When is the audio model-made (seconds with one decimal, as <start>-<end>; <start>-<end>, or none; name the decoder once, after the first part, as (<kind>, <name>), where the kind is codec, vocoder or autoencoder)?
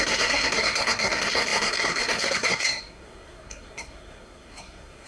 0.0-5.1 (codec, SNAC)